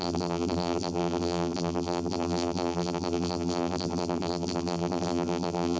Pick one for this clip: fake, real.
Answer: fake